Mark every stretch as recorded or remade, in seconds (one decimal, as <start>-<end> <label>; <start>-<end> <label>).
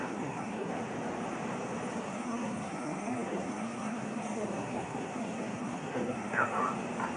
0.0-0.7 remade; 0.7-2.0 recorded; 2.0-6.6 remade; 6.6-7.2 recorded